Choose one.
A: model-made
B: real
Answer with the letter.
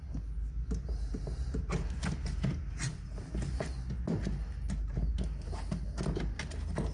B